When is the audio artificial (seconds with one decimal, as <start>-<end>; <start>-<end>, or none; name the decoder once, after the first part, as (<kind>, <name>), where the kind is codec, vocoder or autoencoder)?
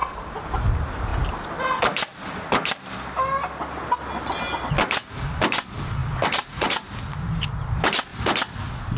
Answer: 6.0-7.5 (vocoder, BigVGAN v2); 8.1-9.0